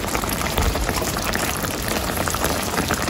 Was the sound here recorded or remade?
remade